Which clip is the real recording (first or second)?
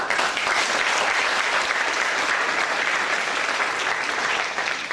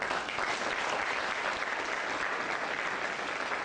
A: second